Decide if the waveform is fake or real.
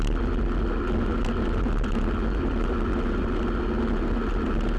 real